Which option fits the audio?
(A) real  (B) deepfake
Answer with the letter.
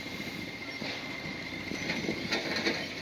A